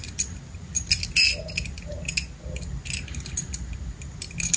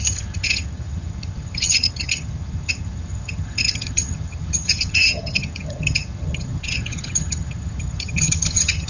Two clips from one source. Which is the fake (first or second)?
second